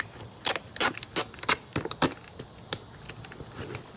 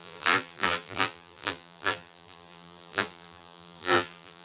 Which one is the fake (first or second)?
second